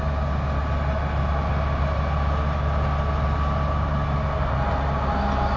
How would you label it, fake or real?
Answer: real